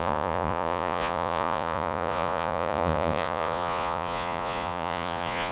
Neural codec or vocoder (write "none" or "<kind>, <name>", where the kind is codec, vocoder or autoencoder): vocoder, Vocos